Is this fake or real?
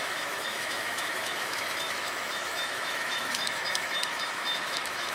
fake